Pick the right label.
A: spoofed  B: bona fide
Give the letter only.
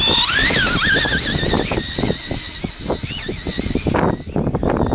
B